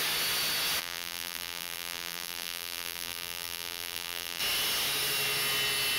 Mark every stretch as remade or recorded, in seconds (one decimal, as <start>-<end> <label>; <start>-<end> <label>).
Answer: 0.0-0.8 recorded; 0.8-4.4 remade; 4.4-6.0 recorded